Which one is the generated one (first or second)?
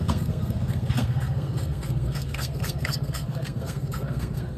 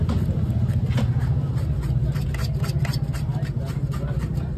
first